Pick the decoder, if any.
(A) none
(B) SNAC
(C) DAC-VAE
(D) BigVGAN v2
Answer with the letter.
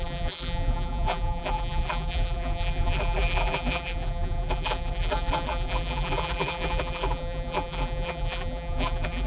D